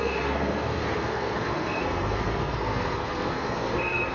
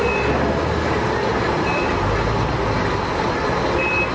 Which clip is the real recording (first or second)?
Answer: second